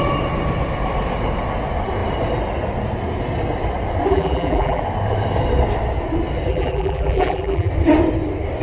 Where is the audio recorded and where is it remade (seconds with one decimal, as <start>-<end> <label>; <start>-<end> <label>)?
0.0-4.1 recorded; 4.1-4.8 remade; 4.8-6.5 recorded; 6.5-7.7 remade; 7.7-8.6 recorded